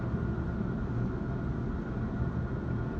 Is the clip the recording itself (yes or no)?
yes